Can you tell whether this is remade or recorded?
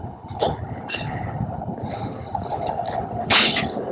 remade